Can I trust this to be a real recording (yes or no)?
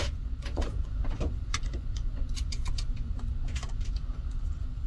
no